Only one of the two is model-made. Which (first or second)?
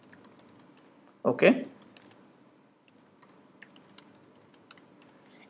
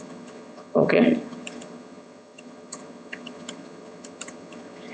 second